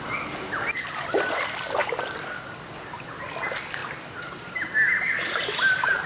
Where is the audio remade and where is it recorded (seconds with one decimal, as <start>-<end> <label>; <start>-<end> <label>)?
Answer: 0.0-6.1 recorded